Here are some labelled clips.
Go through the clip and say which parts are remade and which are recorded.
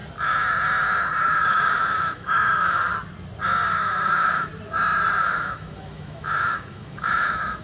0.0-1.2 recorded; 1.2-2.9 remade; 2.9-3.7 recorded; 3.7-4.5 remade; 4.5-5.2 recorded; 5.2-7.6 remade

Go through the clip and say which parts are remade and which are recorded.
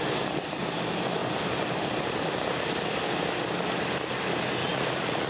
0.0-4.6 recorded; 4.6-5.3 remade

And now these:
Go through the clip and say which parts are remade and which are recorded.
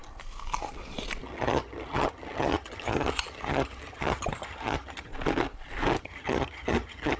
0.0-1.2 recorded; 1.2-5.1 remade; 5.1-6.0 recorded; 6.0-7.2 remade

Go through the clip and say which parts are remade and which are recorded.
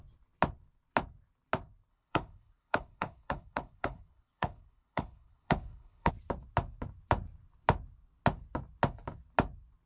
0.0-1.9 recorded; 1.9-6.1 remade; 6.1-9.9 recorded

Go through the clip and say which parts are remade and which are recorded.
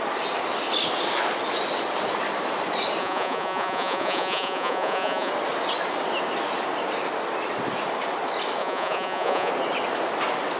0.0-3.0 recorded; 3.0-5.3 remade; 5.3-8.6 recorded; 8.6-9.5 remade; 9.5-10.6 recorded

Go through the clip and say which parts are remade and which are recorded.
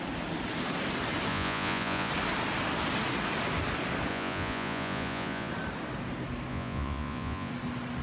0.0-1.3 recorded; 1.3-2.1 remade; 2.1-4.1 recorded; 4.1-5.5 remade; 5.5-6.5 recorded; 6.5-7.5 remade; 7.5-8.0 recorded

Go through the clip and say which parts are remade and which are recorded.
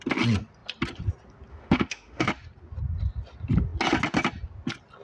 0.0-1.5 recorded; 1.5-2.3 remade; 2.3-5.0 recorded